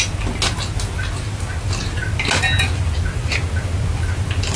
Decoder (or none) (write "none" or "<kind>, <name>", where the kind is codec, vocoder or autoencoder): none